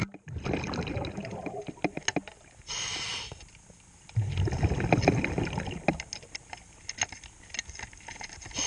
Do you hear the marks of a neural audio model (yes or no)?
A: no